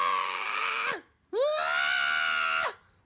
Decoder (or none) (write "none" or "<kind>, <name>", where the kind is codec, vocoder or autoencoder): none